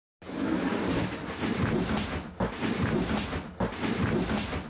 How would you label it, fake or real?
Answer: real